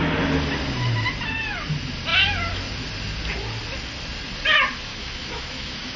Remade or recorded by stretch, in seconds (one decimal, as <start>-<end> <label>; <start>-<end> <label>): 0.0-4.9 recorded; 4.9-6.0 remade